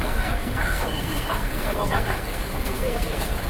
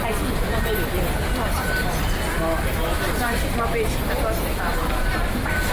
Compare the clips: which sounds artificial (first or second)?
first